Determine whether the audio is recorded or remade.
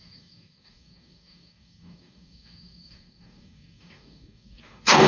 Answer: remade